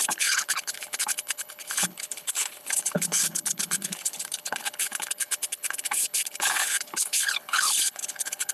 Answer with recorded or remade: remade